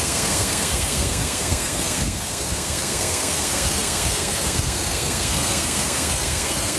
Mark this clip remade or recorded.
remade